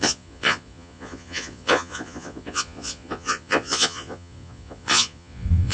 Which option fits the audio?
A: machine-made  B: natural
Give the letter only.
A